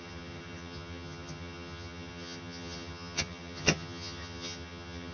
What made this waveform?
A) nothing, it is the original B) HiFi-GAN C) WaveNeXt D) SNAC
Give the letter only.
B